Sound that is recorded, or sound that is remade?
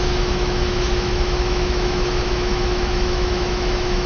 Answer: remade